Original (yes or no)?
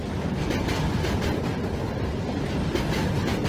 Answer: yes